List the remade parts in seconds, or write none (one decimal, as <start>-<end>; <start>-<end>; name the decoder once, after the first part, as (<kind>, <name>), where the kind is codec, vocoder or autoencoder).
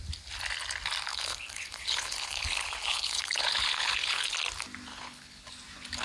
1.1-4.3 (codec, HILCodec); 4.9-5.5